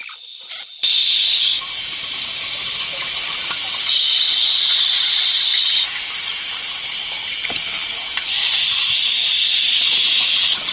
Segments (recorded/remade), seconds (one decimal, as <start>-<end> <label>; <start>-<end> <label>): 0.0-2.9 remade; 2.9-3.5 recorded; 3.5-5.6 remade; 5.6-8.1 recorded; 8.1-10.7 remade